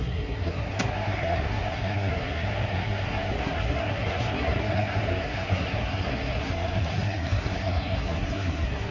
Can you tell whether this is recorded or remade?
remade